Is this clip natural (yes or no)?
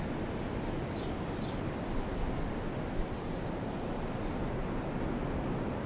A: yes